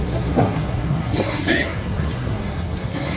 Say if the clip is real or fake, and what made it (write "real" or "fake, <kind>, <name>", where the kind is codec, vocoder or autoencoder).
fake, codec, SNAC